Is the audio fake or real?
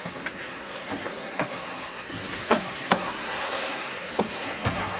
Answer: fake